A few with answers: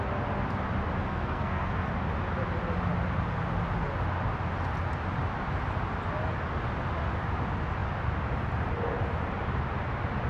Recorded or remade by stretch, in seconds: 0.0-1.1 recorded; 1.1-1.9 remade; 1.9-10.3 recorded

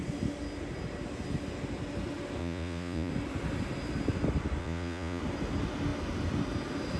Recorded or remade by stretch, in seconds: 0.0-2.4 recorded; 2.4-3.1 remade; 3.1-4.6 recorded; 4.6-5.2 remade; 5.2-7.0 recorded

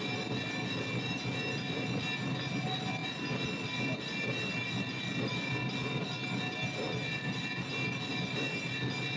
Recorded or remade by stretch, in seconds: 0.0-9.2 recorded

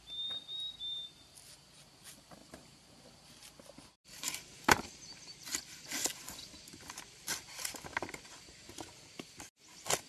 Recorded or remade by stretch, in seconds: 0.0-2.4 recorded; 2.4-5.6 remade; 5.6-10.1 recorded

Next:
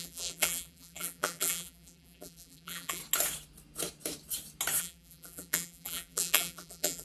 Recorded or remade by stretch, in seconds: 0.0-3.0 remade; 3.0-4.8 recorded; 4.8-7.0 remade

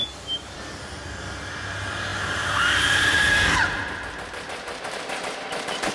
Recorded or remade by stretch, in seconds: 0.0-2.1 recorded; 2.1-5.9 remade

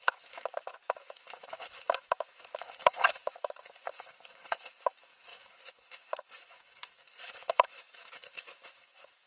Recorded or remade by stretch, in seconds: 0.0-9.3 remade

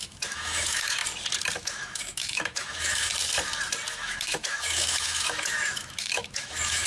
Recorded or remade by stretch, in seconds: 0.0-1.0 remade; 1.0-1.6 recorded; 1.6-3.1 remade; 3.1-3.9 recorded; 3.9-6.9 remade